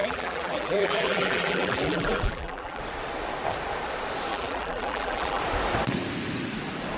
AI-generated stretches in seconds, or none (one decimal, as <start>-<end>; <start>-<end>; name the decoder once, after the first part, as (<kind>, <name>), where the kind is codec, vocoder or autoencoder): 0.0-2.8 (vocoder, BigVGAN v2); 4.3-5.4